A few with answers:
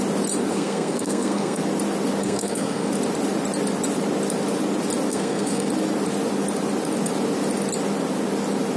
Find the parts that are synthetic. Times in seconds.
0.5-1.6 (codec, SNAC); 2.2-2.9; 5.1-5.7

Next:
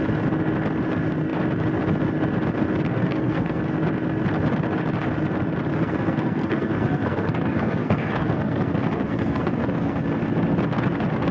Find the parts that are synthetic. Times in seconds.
2.9-3.6 (codec, SNAC); 5.7-10.0

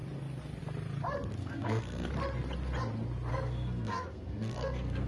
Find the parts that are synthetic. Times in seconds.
1.4-2.1 (codec, SNAC); 3.3-5.1